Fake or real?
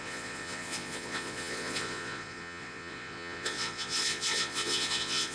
fake